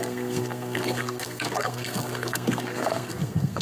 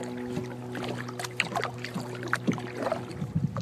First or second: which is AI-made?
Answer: first